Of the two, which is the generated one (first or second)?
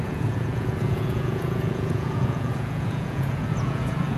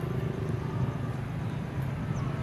first